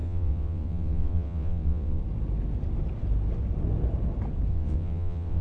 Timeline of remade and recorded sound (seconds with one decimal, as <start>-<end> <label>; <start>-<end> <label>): 0.0-2.0 remade; 2.0-4.5 recorded; 4.5-5.4 remade